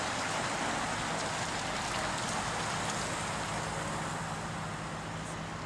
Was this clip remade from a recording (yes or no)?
no